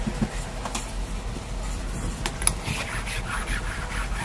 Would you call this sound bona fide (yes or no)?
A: yes